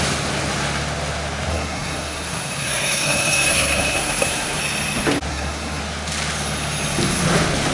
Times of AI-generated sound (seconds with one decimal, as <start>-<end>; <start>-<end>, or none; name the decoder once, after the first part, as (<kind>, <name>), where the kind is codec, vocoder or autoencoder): 1.5-4.6 (codec, SNAC); 5.3-5.8